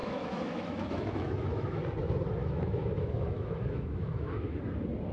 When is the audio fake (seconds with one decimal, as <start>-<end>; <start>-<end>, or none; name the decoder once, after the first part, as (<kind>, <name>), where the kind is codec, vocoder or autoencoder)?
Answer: 0.0-1.8 (autoencoder, DAC-VAE); 2.4-4.6